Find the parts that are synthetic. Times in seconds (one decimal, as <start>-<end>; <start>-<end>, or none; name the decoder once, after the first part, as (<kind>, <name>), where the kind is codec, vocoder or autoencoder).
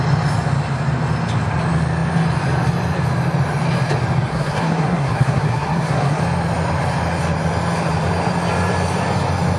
4.3-6.2 (codec, SNAC)